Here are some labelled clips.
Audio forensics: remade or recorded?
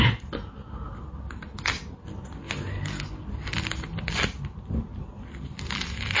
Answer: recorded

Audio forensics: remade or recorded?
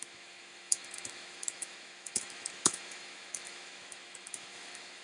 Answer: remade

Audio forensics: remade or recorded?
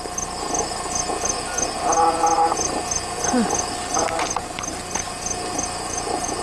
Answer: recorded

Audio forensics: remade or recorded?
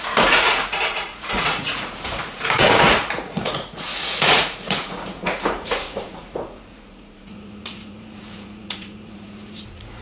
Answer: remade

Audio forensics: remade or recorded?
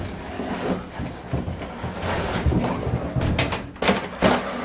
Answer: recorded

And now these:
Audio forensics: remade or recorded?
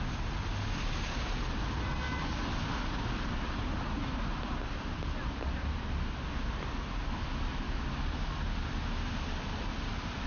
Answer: recorded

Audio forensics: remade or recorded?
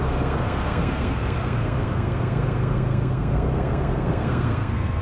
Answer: remade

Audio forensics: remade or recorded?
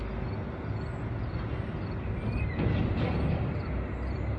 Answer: recorded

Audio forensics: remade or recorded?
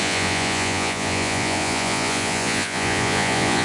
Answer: remade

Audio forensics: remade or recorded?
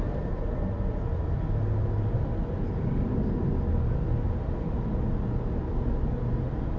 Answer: recorded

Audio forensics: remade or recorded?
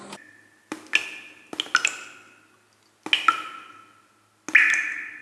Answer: recorded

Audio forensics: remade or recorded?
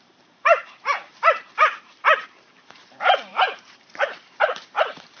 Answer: remade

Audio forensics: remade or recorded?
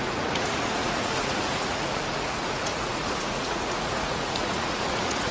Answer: remade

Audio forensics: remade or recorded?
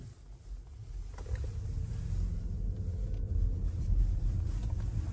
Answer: recorded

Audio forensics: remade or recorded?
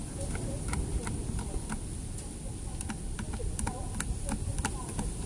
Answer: recorded